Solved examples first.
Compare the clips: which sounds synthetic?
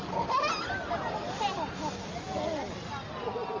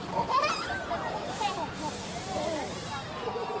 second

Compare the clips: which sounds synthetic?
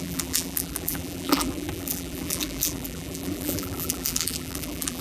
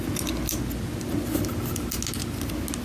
first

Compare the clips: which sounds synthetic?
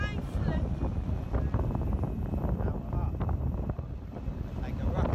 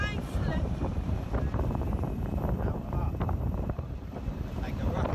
second